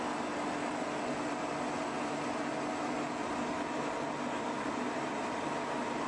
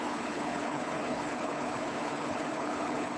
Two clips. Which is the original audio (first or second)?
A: first